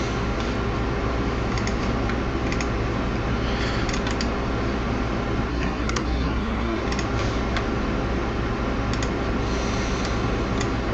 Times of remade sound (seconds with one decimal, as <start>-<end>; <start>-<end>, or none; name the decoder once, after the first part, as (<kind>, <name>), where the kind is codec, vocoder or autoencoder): 5.5-6.8 (codec, SNAC)